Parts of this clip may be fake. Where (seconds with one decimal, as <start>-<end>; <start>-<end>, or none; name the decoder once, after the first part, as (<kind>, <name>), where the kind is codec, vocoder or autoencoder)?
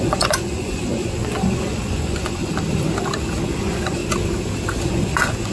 0.0-2.5 (vocoder, Vocos); 3.5-4.0; 4.8-5.5